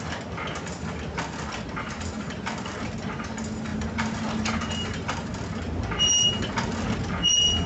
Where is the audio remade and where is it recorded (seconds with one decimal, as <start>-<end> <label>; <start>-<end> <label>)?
0.0-3.7 recorded; 3.7-4.6 remade; 4.6-7.7 recorded

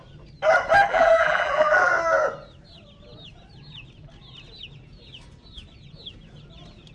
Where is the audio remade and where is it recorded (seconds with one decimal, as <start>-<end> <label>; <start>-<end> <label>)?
0.0-0.9 recorded; 0.9-1.9 remade; 1.9-6.9 recorded